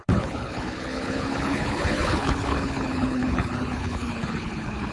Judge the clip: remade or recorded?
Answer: remade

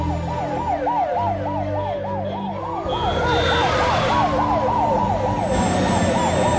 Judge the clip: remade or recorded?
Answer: recorded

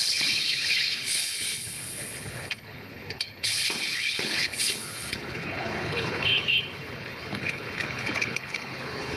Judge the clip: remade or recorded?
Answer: remade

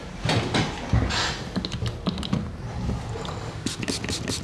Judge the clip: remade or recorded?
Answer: recorded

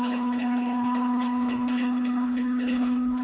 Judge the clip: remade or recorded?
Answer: remade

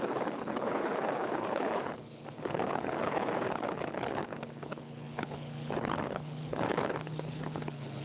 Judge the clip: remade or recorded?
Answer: remade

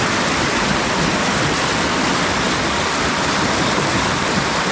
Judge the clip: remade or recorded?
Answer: recorded